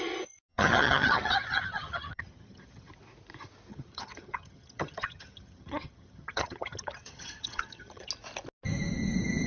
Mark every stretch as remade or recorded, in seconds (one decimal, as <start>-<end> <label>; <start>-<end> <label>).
0.0-0.5 recorded; 0.5-2.9 remade; 2.9-3.7 recorded; 3.7-8.1 remade; 8.1-9.5 recorded